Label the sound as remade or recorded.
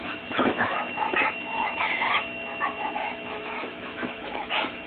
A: remade